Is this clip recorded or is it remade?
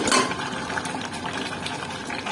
recorded